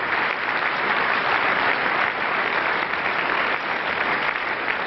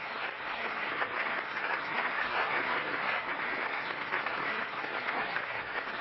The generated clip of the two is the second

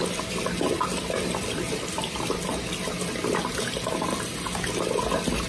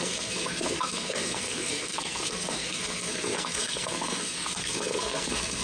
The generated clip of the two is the second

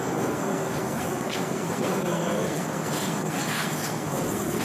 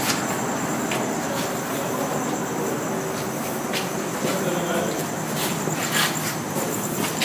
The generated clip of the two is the first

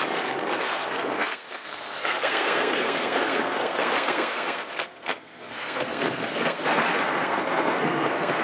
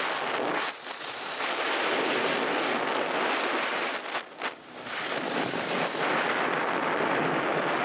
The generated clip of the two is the first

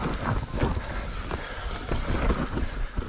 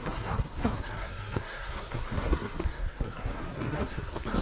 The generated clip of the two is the second